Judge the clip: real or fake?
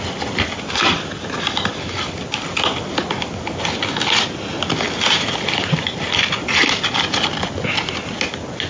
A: real